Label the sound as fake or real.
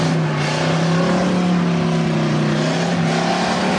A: real